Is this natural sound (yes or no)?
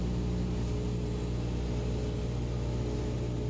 yes